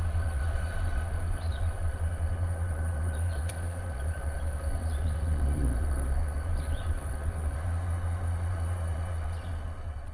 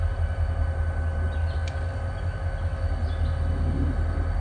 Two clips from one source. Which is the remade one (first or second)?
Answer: first